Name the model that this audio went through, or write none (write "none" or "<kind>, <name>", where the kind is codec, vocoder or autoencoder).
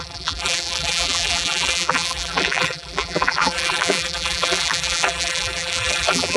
vocoder, BigVGAN v2